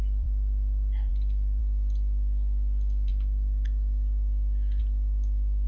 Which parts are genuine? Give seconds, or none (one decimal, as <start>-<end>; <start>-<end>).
3.1-4.8